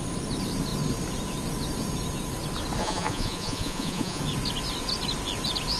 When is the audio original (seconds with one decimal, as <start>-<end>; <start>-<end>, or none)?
0.0-2.8; 4.2-5.8